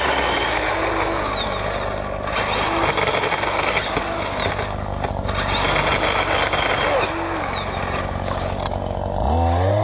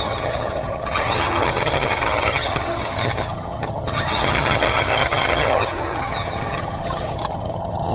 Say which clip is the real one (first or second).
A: first